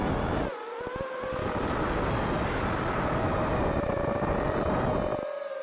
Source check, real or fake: real